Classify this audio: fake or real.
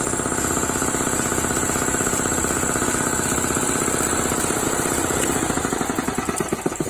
real